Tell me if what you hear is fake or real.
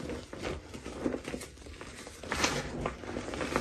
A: real